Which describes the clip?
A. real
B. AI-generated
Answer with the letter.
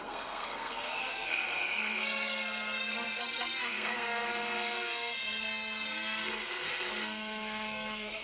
B